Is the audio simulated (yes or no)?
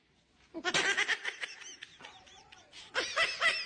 no